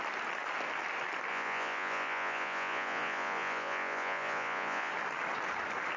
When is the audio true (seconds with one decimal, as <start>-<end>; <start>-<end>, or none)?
0.0-1.3; 4.9-6.0